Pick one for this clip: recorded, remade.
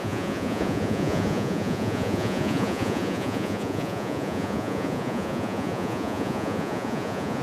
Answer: remade